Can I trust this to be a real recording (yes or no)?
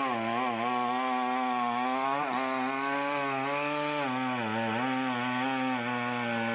yes